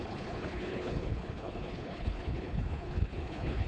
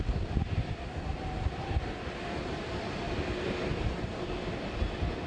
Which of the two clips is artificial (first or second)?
first